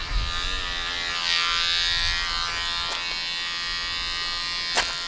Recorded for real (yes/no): yes